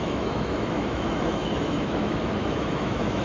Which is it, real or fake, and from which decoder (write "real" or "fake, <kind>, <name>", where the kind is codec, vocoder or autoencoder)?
fake, autoencoder, DAC-VAE